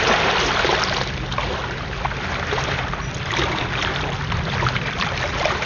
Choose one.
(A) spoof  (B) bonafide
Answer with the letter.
A